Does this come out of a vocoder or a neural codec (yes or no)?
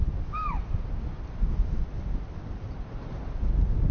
no